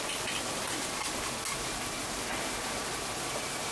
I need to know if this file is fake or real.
real